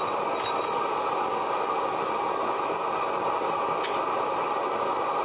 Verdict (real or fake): real